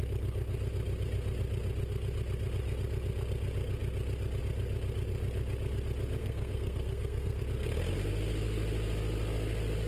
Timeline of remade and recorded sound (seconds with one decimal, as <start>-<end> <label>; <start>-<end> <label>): 0.0-6.2 recorded; 6.2-7.4 remade; 7.4-9.9 recorded